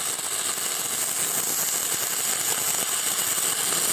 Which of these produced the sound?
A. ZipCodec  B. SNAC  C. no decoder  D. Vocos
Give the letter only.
C